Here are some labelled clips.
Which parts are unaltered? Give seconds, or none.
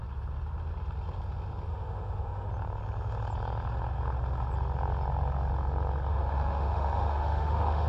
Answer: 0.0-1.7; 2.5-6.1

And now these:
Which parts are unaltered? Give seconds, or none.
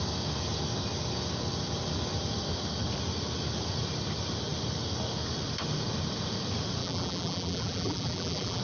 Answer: 0.0-6.8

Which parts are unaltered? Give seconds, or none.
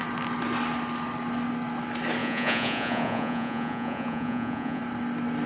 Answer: 0.0-2.2; 4.8-5.5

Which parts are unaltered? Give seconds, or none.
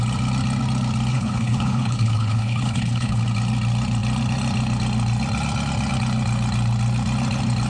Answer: 0.0-1.1; 3.2-7.7